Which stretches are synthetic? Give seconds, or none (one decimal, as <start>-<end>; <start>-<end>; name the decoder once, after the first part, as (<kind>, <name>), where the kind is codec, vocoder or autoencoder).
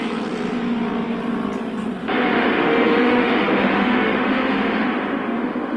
2.0-5.8 (autoencoder, DAC-VAE)